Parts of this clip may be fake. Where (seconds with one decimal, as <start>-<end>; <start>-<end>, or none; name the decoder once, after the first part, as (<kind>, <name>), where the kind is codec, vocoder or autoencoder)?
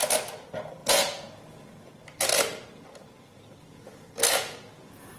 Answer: 0.8-1.4 (vocoder, Vocos); 3.6-5.2